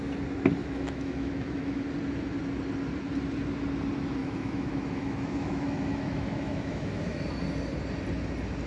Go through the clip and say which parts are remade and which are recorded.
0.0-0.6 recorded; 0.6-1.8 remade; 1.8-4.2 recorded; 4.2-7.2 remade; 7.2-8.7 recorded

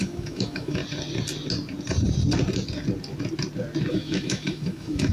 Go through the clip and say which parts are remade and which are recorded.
0.0-0.8 remade; 0.8-3.9 recorded; 3.9-5.1 remade